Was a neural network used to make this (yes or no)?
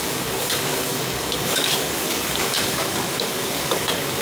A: yes